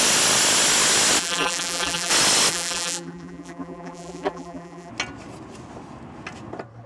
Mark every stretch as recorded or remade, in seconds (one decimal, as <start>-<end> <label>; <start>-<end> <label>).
0.0-1.2 recorded; 1.2-2.1 remade; 2.1-2.5 recorded; 2.5-4.9 remade; 4.9-6.9 recorded